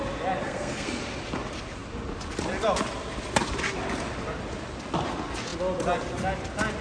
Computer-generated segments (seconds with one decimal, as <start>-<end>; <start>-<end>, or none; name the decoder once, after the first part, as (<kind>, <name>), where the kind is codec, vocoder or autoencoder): 0.4-1.0 (codec, SNAC)